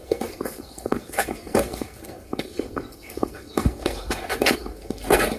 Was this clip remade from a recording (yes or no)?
yes